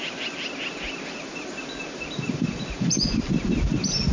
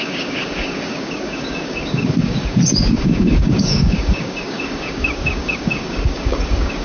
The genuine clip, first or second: first